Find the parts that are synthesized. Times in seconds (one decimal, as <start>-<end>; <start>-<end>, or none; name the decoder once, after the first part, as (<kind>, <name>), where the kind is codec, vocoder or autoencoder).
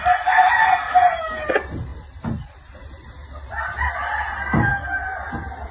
1.9-2.7 (vocoder, BigVGAN v2); 4.7-5.3